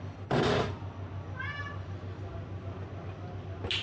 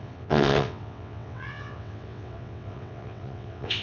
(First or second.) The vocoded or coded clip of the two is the second